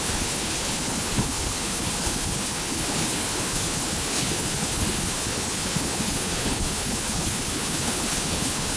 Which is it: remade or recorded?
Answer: remade